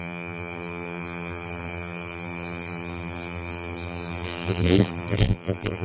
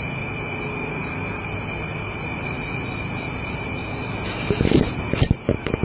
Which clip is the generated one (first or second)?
first